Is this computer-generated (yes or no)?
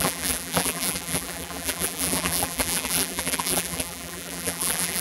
yes